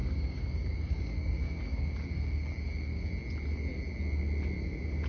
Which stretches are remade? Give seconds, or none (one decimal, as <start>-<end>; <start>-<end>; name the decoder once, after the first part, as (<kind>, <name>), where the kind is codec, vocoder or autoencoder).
0.0-3.1 (codec, DAC)